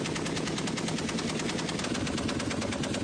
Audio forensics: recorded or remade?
recorded